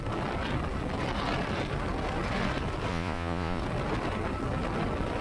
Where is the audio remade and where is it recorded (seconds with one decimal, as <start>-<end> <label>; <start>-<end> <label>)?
0.0-2.9 recorded; 2.9-3.6 remade; 3.6-5.2 recorded